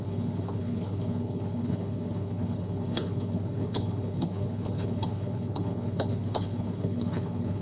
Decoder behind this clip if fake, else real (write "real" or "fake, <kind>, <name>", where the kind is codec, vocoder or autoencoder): fake, codec, HILCodec